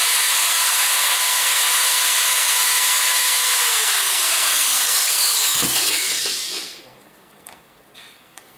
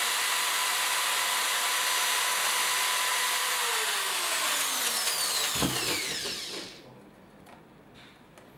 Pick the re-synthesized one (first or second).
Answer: first